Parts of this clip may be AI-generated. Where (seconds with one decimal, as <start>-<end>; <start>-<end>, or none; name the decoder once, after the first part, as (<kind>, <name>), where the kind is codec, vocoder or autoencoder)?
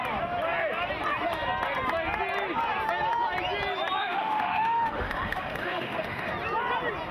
4.0-6.3 (autoencoder, DAC-VAE)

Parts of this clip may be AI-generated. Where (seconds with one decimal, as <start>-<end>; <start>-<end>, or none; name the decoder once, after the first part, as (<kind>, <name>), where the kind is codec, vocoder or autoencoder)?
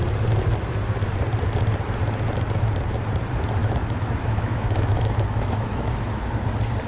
3.6-6.2 (autoencoder, DAC-VAE)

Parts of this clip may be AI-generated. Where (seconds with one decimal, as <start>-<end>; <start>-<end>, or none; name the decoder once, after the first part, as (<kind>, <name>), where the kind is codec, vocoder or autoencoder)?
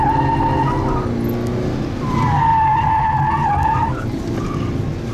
none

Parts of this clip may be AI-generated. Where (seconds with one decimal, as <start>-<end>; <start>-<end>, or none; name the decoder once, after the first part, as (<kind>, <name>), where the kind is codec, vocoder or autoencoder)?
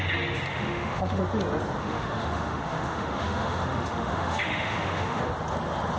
0.5-1.2 (autoencoder, DAC-VAE); 1.8-5.2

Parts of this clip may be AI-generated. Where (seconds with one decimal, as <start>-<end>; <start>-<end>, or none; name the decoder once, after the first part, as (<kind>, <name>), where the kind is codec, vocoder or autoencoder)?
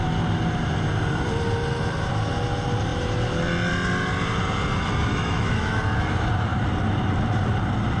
5.1-5.8 (autoencoder, DAC-VAE)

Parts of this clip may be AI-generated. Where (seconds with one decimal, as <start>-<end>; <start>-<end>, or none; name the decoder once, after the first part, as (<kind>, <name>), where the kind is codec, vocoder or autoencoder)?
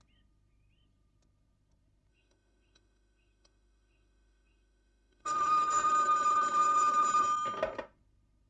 2.1-5.9 (autoencoder, DAC-VAE)